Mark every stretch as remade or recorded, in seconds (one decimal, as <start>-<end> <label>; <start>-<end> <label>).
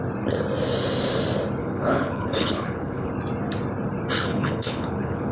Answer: 0.0-1.6 recorded; 1.6-3.1 remade; 3.1-4.3 recorded; 4.3-5.3 remade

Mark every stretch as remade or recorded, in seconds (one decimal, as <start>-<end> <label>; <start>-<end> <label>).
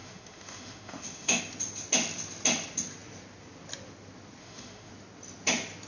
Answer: 0.0-1.4 remade; 1.4-4.4 recorded; 4.4-4.9 remade; 4.9-5.9 recorded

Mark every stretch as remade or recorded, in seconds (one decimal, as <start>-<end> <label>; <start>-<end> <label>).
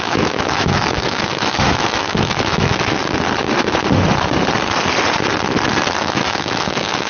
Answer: 0.0-3.0 remade; 3.0-6.0 recorded; 6.0-7.1 remade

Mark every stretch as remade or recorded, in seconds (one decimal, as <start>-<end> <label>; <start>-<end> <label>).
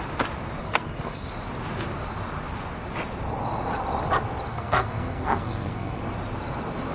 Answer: 0.0-0.6 recorded; 0.6-1.3 remade; 1.3-4.5 recorded; 4.5-6.0 remade; 6.0-6.9 recorded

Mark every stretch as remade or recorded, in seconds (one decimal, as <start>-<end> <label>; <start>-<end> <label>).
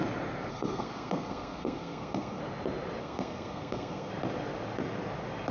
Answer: 0.0-0.5 recorded; 0.5-2.4 remade; 2.4-3.0 recorded; 3.0-4.1 remade; 4.1-5.5 recorded